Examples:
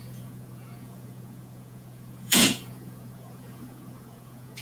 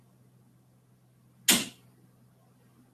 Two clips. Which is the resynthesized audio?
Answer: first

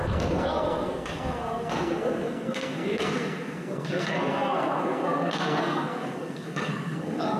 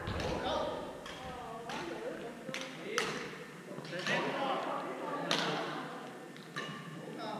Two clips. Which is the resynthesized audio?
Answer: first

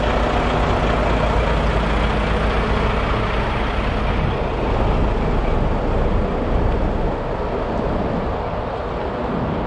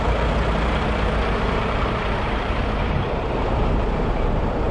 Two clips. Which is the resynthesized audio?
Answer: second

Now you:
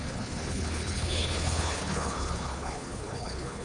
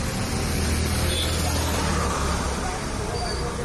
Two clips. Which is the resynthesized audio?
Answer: first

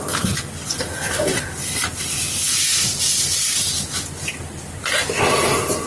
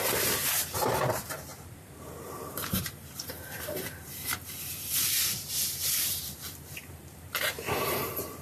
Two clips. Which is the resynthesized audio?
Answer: second